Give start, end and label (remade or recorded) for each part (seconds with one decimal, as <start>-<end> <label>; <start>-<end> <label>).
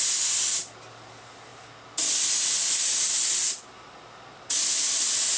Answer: 0.0-5.4 recorded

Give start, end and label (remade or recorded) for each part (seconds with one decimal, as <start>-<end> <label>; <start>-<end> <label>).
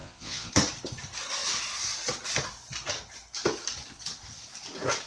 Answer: 0.0-0.5 remade; 0.5-5.1 recorded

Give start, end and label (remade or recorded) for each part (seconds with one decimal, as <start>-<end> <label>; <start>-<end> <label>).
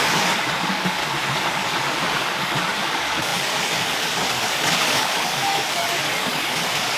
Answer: 0.0-1.0 remade; 1.0-1.5 recorded; 1.5-7.0 remade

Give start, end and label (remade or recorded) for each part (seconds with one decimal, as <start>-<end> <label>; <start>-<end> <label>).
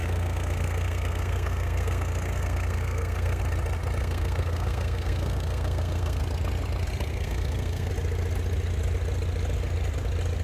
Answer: 0.0-3.4 remade; 3.4-4.0 recorded; 4.0-6.2 remade; 6.2-7.1 recorded; 7.1-7.9 remade; 7.9-10.4 recorded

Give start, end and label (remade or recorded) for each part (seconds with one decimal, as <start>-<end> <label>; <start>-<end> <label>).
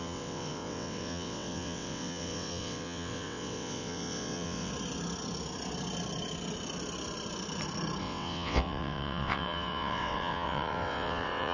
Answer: 0.0-4.7 remade; 4.7-8.0 recorded; 8.0-11.5 remade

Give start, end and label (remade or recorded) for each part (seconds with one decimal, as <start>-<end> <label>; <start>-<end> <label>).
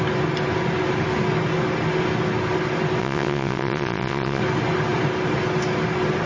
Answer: 0.0-3.0 recorded; 3.0-4.4 remade; 4.4-6.3 recorded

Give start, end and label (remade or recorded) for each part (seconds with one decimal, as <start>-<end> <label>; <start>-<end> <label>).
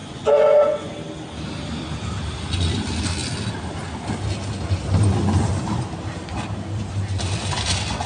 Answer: 0.0-0.9 remade; 0.9-8.1 recorded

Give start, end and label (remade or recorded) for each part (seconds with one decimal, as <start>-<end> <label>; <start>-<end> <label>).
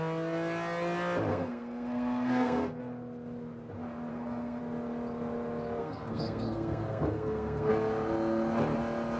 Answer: 0.0-1.3 recorded; 1.3-2.8 remade; 2.8-4.1 recorded; 4.1-4.6 remade; 4.6-5.8 recorded; 5.8-7.7 remade; 7.7-9.2 recorded